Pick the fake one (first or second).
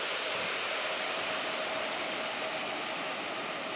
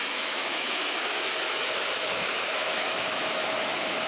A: second